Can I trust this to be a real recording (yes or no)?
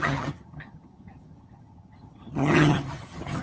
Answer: no